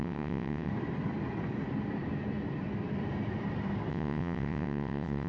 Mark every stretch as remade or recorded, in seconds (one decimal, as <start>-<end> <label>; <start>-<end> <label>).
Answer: 0.0-0.7 remade; 0.7-3.9 recorded; 3.9-5.3 remade